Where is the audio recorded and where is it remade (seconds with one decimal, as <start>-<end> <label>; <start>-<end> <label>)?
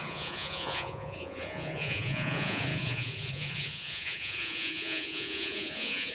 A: 0.0-6.1 remade